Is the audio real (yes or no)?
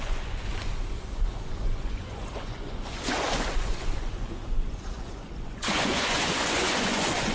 no